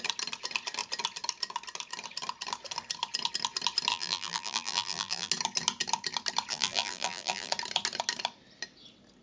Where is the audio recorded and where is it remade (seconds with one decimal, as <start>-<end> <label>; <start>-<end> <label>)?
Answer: 0.0-3.9 recorded; 3.9-5.3 remade; 5.3-6.5 recorded; 6.5-7.5 remade; 7.5-9.2 recorded